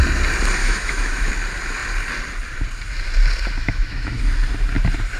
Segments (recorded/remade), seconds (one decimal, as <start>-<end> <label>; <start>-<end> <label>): 0.0-0.6 recorded; 0.6-1.3 remade; 1.3-3.6 recorded; 3.6-4.2 remade; 4.2-5.2 recorded

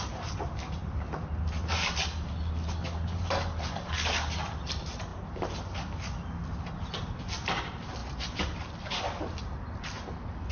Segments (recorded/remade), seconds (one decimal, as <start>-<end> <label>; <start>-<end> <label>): 0.0-10.5 recorded

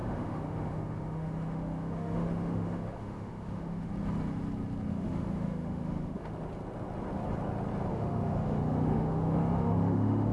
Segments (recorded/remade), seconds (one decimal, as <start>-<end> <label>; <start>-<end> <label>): 0.0-3.9 remade; 3.9-4.9 recorded; 4.9-6.3 remade; 6.3-7.9 recorded; 7.9-10.3 remade

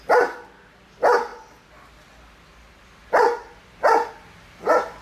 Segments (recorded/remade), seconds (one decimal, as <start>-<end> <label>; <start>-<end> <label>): 0.0-5.0 recorded

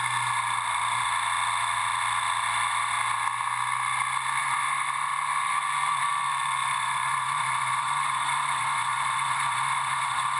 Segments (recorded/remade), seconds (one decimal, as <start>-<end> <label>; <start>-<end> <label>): 0.0-4.4 recorded; 4.4-10.4 remade

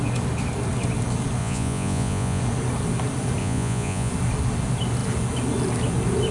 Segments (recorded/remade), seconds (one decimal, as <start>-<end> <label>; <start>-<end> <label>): 0.0-1.4 recorded; 1.4-2.4 remade; 2.4-3.4 recorded; 3.4-4.1 remade; 4.1-6.3 recorded

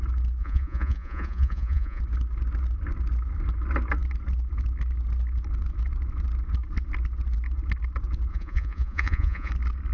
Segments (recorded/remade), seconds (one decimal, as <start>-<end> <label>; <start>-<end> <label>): 0.0-0.4 recorded; 0.4-2.0 remade; 2.0-8.3 recorded; 8.3-9.5 remade; 9.5-9.9 recorded

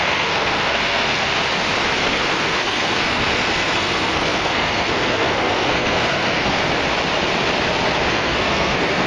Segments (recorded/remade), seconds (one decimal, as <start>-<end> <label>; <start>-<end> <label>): 0.0-1.3 remade; 1.3-2.0 recorded; 2.0-6.6 remade; 6.6-8.1 recorded; 8.1-9.1 remade